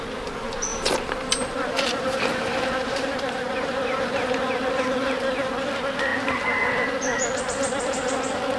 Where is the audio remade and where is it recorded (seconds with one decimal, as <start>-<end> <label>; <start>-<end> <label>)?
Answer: 0.0-0.7 recorded; 0.7-4.5 remade; 4.5-8.6 recorded